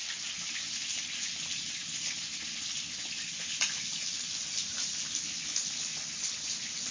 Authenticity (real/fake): real